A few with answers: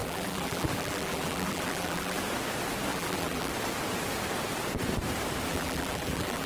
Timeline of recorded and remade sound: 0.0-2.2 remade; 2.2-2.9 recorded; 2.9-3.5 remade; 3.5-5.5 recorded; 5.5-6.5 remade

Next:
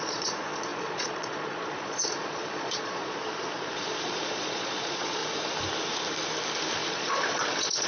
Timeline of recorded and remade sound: 0.0-5.2 remade; 5.2-6.9 recorded; 6.9-7.9 remade

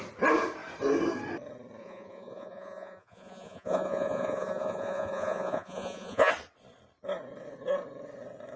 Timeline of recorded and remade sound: 0.0-1.8 recorded; 1.8-6.3 remade; 6.3-8.6 recorded